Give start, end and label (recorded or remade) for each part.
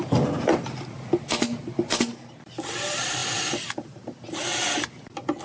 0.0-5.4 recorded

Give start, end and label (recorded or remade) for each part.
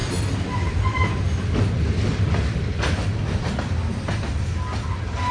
0.0-3.2 remade; 3.2-5.3 recorded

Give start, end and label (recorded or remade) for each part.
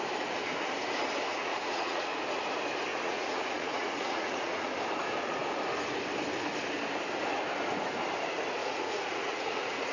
0.0-1.3 recorded; 1.3-2.1 remade; 2.1-2.9 recorded; 2.9-4.7 remade; 4.7-8.6 recorded; 8.6-9.9 remade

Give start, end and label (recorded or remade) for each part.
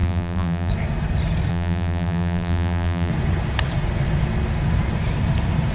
0.0-0.7 remade; 0.7-1.5 recorded; 1.5-3.1 remade; 3.1-5.7 recorded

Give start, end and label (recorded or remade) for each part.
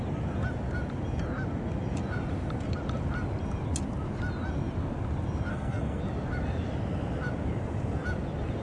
0.0-5.5 recorded; 5.5-6.0 remade; 6.0-8.6 recorded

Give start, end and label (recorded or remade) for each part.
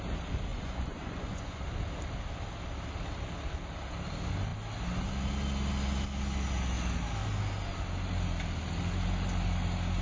0.0-0.5 recorded; 0.5-1.6 remade; 1.6-10.0 recorded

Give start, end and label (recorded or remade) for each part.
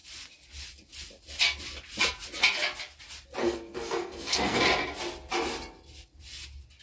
0.0-3.4 recorded; 3.4-4.6 remade; 4.6-6.8 recorded